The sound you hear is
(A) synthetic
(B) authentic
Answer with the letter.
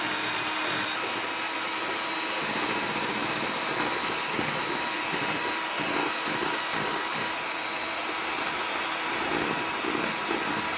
B